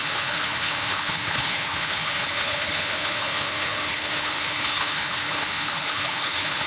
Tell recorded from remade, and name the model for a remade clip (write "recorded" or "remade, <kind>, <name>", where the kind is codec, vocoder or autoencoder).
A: remade, codec, HILCodec